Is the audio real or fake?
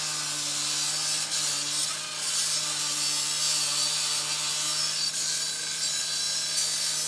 real